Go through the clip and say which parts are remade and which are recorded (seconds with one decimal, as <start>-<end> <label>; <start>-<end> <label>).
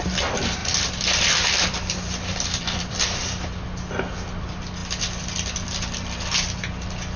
0.0-0.6 recorded; 0.6-3.0 remade; 3.0-7.2 recorded